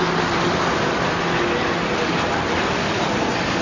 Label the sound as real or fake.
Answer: real